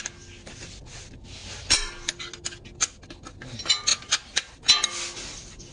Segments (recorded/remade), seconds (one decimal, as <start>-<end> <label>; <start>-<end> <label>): 0.0-5.7 recorded